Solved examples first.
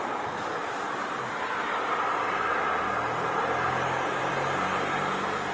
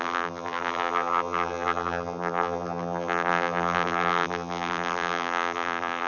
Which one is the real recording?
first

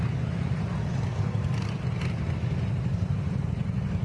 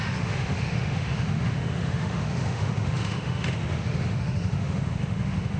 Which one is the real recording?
first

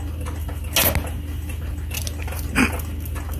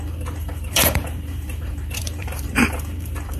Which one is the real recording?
first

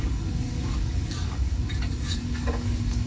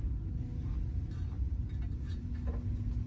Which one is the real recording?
second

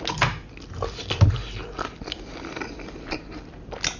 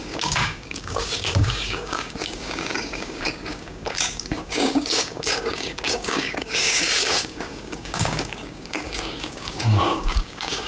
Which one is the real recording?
first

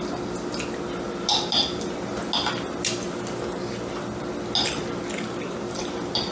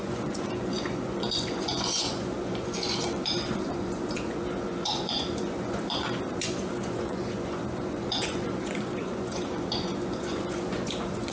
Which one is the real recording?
first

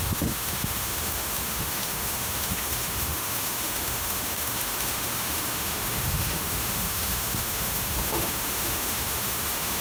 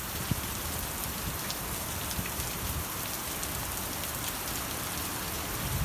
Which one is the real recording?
second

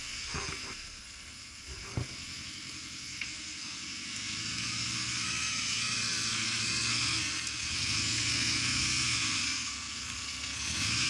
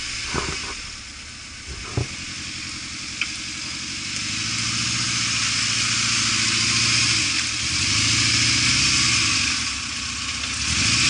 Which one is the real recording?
second